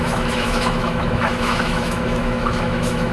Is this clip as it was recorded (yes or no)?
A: no